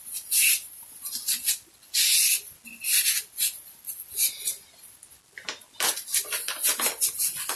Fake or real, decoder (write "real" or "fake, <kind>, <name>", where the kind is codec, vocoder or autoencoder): real